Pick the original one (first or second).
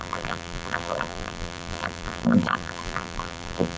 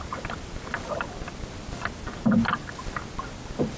second